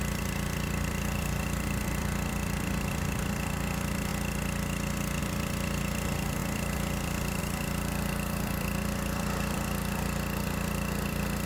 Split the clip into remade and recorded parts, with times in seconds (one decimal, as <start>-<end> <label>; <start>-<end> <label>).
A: 0.0-4.1 remade; 4.1-5.2 recorded; 5.2-11.5 remade